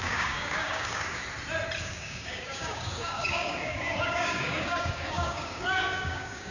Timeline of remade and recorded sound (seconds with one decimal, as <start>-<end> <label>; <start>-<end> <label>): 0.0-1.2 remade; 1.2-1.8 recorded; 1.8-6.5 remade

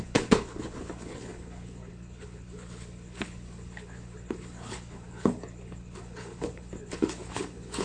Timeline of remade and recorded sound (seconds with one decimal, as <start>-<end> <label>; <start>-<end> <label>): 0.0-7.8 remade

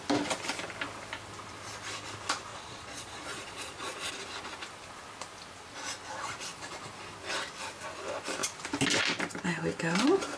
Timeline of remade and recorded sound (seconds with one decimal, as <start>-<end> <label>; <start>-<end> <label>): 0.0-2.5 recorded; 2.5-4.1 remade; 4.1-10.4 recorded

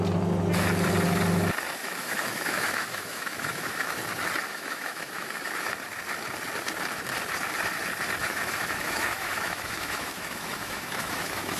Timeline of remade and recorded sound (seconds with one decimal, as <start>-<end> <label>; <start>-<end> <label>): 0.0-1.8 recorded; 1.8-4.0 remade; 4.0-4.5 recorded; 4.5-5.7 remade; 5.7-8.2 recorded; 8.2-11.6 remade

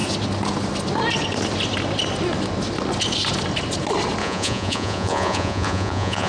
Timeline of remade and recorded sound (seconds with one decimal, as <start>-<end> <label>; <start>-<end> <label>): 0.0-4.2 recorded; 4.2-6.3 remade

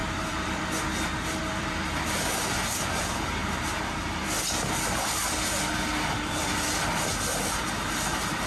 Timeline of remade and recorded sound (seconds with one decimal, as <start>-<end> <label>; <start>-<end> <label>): 0.0-3.4 remade; 3.4-5.7 recorded; 5.7-8.5 remade